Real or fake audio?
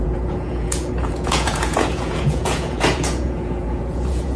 fake